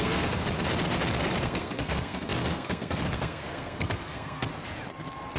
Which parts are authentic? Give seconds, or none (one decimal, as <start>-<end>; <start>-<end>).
0.4-1.4; 4.5-5.4